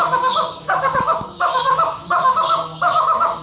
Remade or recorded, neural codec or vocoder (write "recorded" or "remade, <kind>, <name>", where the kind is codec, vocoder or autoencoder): remade, codec, DAC